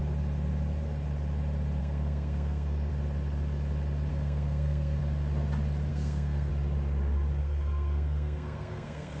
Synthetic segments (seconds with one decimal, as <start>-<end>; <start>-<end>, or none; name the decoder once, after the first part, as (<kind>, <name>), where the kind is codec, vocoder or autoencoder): 1.8-2.9 (codec, SNAC); 4.1-5.0; 5.9-6.5; 7.4-9.2